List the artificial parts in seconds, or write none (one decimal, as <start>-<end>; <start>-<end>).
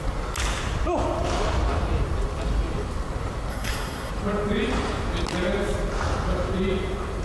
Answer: 3.5-4.1